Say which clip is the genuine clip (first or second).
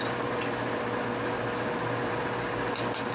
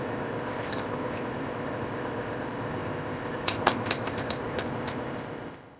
first